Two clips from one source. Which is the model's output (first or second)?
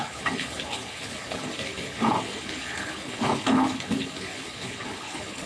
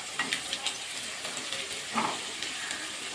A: first